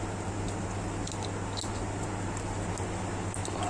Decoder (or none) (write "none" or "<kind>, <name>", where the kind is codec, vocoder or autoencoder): none